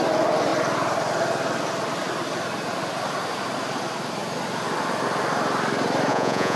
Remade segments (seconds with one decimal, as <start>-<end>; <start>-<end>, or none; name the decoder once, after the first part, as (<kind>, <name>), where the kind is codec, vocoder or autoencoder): 6.1-6.6 (vocoder, Vocos)